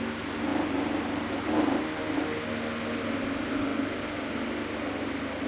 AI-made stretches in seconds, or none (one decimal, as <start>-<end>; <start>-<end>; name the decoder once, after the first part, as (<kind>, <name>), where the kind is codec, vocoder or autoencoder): none

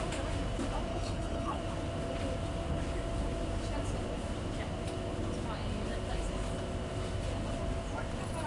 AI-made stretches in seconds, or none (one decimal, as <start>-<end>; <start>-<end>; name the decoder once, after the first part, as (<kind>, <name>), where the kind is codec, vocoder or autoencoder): 0.9-1.6 (codec, HILCodec)

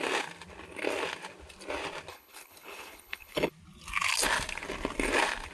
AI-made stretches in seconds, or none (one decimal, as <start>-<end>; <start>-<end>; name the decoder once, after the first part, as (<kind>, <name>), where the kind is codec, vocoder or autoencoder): 2.1-3.5 (codec, HILCodec)